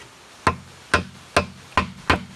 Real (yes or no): yes